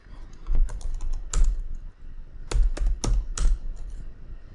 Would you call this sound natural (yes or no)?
yes